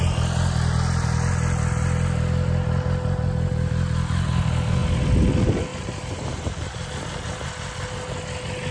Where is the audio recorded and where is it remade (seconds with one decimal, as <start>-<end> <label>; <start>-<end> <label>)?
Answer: 0.0-5.7 recorded; 5.7-6.9 remade; 6.9-8.7 recorded